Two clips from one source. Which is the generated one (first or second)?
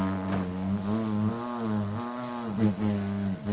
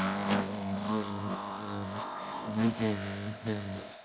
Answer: second